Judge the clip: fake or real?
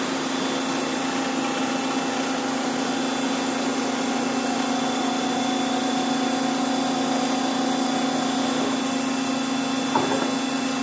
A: real